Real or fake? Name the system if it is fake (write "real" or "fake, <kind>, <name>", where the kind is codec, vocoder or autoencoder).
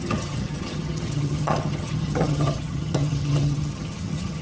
fake, vocoder, HiFi-GAN